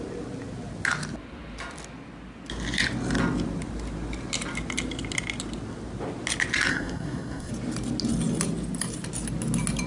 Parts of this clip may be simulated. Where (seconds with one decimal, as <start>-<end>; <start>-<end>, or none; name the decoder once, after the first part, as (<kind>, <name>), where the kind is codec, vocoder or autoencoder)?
6.7-7.5 (codec, SNAC)